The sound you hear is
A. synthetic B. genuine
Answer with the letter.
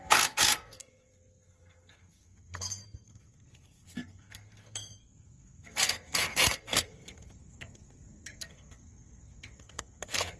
A